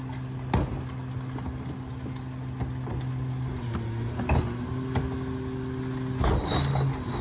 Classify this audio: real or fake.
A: real